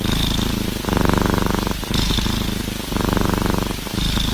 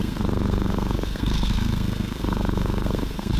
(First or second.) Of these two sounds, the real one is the first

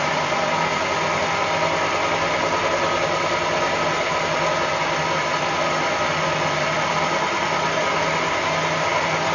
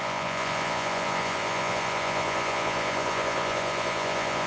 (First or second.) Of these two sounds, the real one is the first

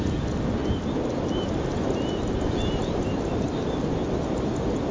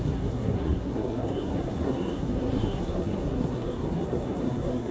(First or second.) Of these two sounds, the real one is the first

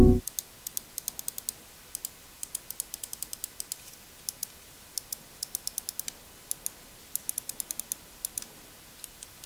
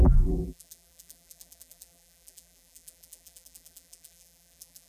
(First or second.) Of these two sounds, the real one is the first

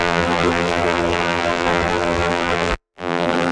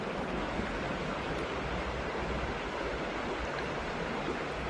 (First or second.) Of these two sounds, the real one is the second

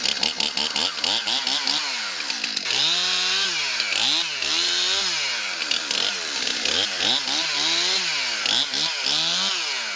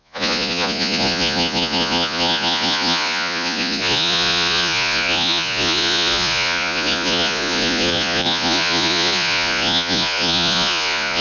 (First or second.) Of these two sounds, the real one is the first